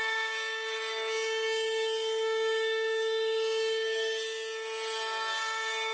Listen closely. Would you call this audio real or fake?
fake